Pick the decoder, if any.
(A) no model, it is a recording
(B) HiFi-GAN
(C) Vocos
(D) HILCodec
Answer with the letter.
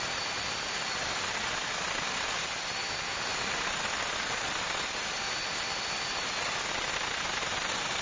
A